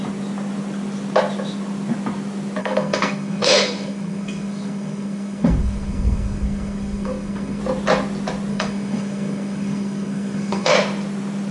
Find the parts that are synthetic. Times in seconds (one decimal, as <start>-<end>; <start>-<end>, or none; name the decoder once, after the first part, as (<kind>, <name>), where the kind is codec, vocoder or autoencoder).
2.6-7.6 (codec, SNAC); 8.5-10.7